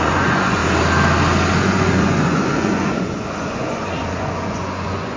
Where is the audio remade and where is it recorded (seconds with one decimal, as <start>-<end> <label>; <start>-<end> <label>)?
0.0-0.6 remade; 0.6-1.6 recorded; 1.6-5.2 remade